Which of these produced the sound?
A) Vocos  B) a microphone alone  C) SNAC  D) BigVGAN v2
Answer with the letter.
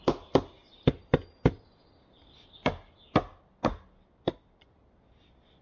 B